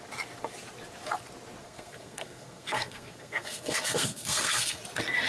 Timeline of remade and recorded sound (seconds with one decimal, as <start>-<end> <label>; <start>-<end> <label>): 0.0-1.6 recorded; 1.6-4.8 remade; 4.8-5.3 recorded